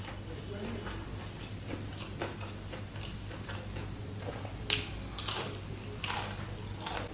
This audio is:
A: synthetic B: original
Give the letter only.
B